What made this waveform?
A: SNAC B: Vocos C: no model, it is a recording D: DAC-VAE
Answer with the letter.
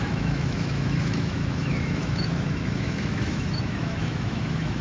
D